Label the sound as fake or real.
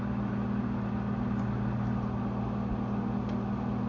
real